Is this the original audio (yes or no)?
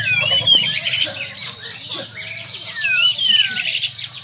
no